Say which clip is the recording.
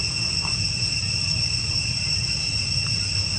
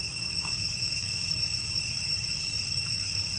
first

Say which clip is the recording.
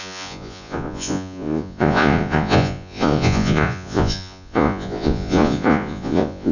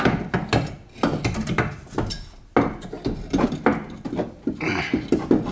second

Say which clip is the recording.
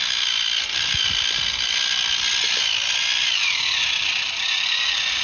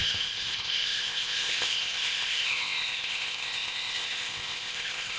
first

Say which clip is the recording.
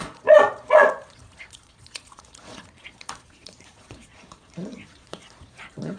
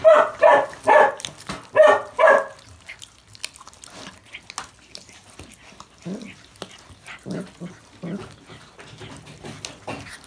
second